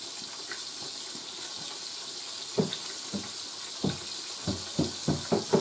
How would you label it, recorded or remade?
recorded